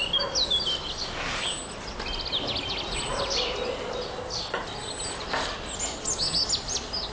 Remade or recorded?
recorded